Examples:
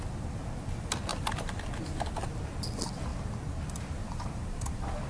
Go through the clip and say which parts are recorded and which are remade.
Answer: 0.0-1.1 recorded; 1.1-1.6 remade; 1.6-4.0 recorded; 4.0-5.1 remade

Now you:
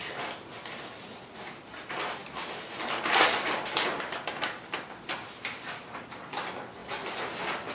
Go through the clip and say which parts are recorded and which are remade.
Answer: 0.0-7.7 recorded

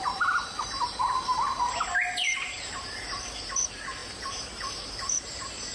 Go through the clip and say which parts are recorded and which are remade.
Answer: 0.0-5.7 remade

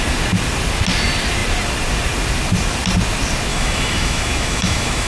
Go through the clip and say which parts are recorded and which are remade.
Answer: 0.0-3.5 recorded; 3.5-5.1 remade